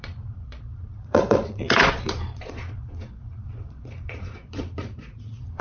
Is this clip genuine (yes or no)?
no